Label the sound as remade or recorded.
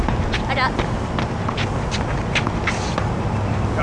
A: recorded